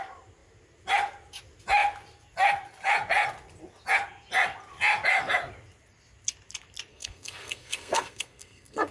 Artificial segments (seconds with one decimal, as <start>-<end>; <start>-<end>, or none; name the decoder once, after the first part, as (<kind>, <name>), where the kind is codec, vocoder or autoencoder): 6.9-8.9 (codec, SNAC)